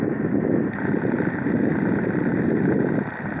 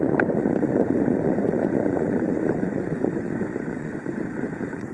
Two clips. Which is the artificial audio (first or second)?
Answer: second